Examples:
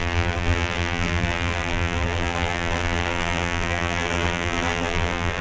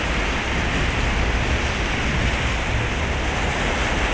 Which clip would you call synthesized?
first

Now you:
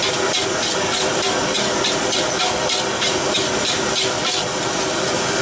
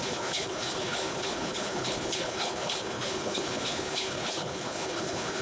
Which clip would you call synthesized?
second